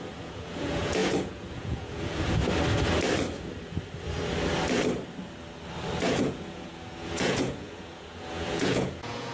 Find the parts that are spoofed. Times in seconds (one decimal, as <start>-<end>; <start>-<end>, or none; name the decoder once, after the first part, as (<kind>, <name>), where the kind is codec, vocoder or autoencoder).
0.0-2.4 (vocoder, Vocos); 6.2-9.3